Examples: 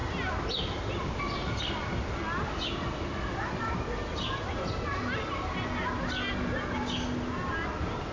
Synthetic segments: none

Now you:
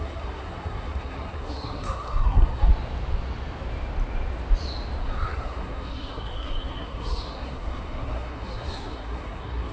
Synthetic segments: 0.0-2.7 (codec, SNAC); 5.0-9.7

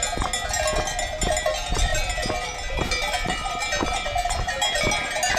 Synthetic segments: none

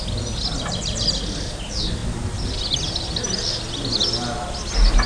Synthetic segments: none

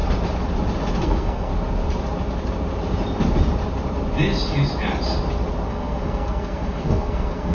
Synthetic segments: 1.0-1.5 (codec, SNAC); 5.7-7.5

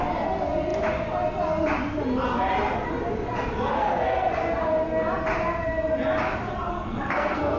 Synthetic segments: 3.7-4.4 (codec, SNAC); 6.7-7.6